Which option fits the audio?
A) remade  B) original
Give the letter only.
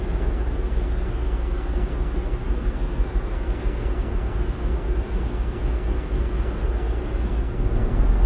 A